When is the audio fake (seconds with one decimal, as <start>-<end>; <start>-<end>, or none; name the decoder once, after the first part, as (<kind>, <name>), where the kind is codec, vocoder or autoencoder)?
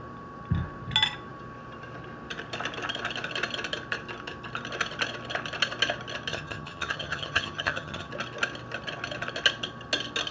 6.3-8.1 (vocoder, HiFi-GAN)